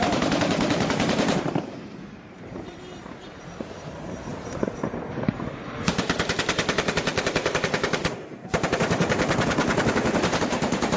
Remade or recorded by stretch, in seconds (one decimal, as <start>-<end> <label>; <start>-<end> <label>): 0.0-11.0 remade